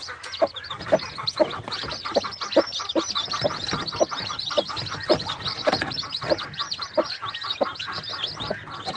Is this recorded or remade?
recorded